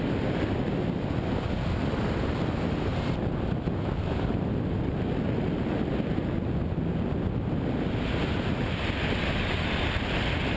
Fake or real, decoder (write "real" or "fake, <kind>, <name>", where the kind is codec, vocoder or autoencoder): real